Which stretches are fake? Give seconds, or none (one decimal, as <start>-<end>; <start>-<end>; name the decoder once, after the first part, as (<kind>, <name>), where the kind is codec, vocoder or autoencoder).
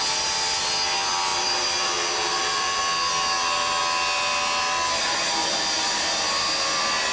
1.3-2.8 (vocoder, BigVGAN v2); 5.4-6.0